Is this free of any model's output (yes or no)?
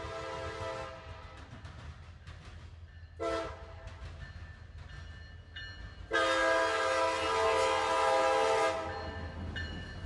yes